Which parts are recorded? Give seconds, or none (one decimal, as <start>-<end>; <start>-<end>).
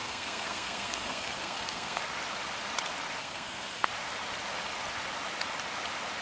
2.0-3.2; 3.9-6.2